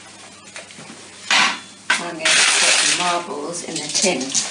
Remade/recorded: recorded